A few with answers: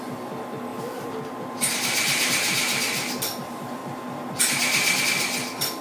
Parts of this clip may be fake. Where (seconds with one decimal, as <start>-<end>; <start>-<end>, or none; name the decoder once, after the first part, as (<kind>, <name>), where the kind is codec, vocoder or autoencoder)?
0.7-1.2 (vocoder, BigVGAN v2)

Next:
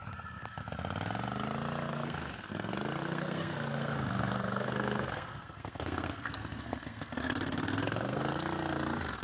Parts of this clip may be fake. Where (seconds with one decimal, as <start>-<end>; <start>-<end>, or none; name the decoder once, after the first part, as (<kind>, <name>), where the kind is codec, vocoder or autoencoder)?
1.9-2.5 (codec, SNAC); 3.0-8.2

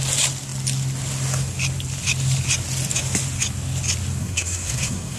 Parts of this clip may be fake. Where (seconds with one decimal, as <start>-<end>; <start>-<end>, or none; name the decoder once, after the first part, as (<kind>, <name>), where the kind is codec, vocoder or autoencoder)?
4.2-5.2 (codec, SNAC)

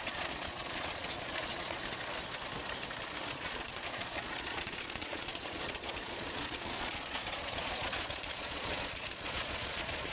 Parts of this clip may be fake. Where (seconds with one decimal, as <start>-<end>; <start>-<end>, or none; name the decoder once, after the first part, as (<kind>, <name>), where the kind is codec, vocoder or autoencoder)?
0.0-1.8 (vocoder, Vocos); 3.3-10.1